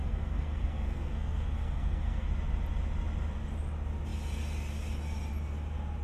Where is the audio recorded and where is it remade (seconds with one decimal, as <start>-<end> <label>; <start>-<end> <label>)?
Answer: 0.0-2.3 remade; 2.3-6.0 recorded